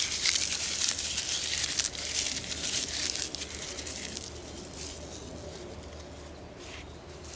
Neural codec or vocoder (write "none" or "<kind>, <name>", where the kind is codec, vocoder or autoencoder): none